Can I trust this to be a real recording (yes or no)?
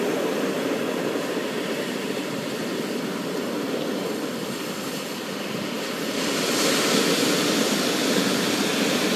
yes